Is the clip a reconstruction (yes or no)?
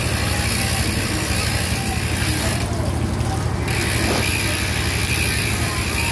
no